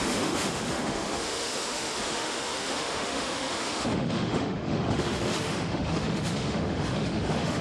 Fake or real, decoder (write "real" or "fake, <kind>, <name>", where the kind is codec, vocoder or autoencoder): fake, autoencoder, DAC-VAE